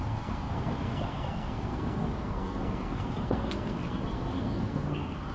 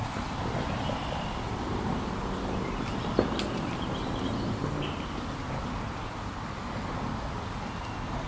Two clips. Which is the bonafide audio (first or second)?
second